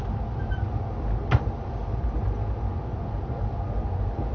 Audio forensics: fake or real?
real